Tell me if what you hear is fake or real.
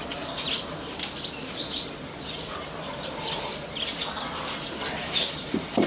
real